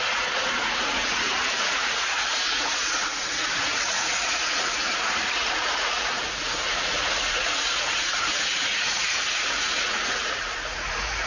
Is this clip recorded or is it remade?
remade